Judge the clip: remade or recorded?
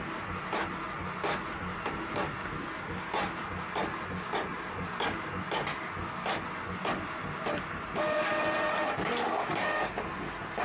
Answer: recorded